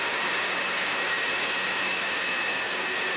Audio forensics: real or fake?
real